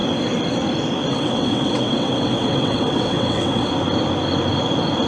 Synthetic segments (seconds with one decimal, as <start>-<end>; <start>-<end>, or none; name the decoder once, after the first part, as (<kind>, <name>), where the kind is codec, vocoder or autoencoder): 1.1-3.7 (vocoder, WaveNeXt)